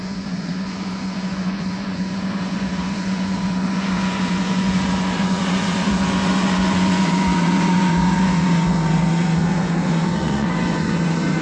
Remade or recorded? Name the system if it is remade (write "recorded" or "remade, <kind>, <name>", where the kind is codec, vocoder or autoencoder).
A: remade, vocoder, Vocos